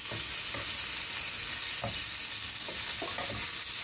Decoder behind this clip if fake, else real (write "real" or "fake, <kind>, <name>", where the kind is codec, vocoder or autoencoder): real